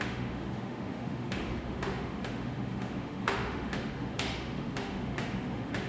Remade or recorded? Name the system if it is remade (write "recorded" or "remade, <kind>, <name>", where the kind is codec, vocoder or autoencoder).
remade, autoencoder, DAC-VAE